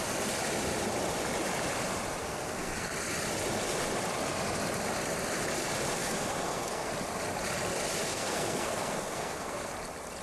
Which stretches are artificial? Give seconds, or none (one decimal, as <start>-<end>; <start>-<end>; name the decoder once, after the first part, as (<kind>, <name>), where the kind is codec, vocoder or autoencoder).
2.2-2.9 (codec, SNAC); 6.0-6.9; 8.0-9.7